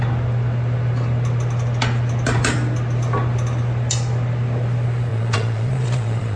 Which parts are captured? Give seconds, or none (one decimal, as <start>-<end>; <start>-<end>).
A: 0.0-5.1